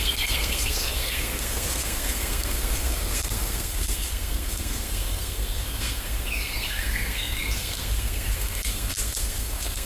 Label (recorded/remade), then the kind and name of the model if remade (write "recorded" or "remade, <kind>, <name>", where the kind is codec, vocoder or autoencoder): remade, codec, SNAC